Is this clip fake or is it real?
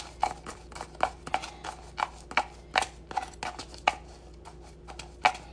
real